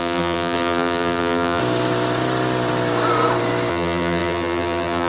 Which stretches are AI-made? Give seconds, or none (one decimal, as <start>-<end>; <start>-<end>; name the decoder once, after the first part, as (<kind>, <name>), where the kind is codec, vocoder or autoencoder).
0.0-1.6 (vocoder, BigVGAN v2); 3.7-5.1